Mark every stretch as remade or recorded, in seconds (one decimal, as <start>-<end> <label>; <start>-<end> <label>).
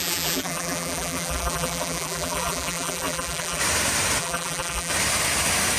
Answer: 0.0-3.6 remade; 3.6-4.2 recorded; 4.2-4.9 remade; 4.9-5.8 recorded